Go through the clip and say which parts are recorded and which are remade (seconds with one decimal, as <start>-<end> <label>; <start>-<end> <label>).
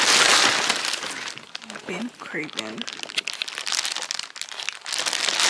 0.0-5.5 recorded